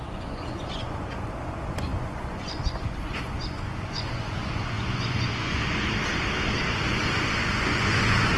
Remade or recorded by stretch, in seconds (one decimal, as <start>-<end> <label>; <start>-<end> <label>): 0.0-5.9 remade; 5.9-6.6 recorded; 6.6-8.4 remade